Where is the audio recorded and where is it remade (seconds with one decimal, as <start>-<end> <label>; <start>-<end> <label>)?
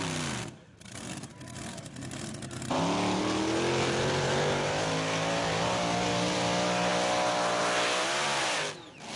0.0-9.2 recorded